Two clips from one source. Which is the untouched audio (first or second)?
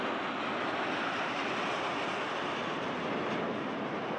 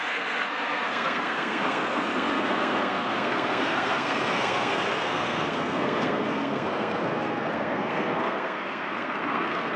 first